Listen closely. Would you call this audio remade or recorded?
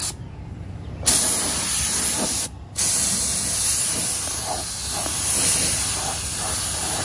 recorded